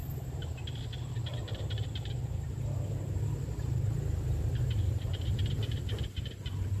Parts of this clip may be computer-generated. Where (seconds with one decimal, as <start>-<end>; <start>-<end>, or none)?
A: 0.0-0.6; 1.3-5.4